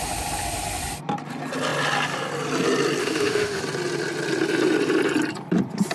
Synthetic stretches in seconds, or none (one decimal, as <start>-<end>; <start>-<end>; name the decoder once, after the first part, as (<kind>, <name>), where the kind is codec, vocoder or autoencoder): 3.0-3.6 (autoencoder, DAC-VAE)